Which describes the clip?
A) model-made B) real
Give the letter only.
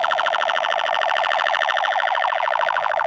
A